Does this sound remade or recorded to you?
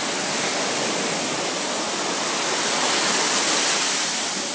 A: recorded